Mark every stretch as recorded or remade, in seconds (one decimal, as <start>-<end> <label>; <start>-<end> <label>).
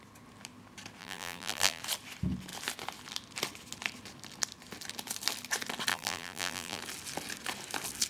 0.0-1.0 recorded; 1.0-1.8 remade; 1.8-5.9 recorded; 5.9-6.8 remade; 6.8-8.1 recorded